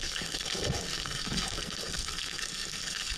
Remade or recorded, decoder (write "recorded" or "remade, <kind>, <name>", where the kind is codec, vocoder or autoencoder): remade, codec, SNAC